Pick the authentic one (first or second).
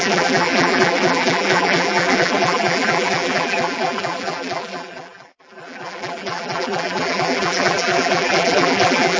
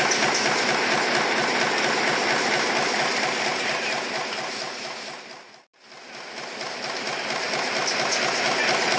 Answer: second